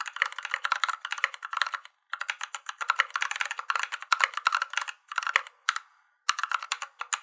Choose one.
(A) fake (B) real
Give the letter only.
B